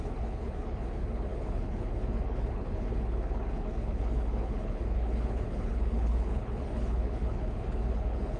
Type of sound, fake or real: fake